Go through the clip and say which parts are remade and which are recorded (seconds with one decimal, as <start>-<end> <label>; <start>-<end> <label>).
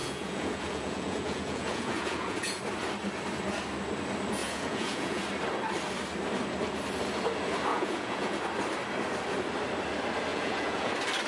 0.0-2.6 remade; 2.6-4.4 recorded; 4.4-5.2 remade; 5.2-7.7 recorded; 7.7-8.4 remade; 8.4-10.3 recorded; 10.3-10.9 remade; 10.9-11.3 recorded